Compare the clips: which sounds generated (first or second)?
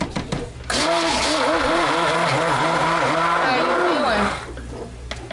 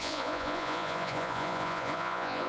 second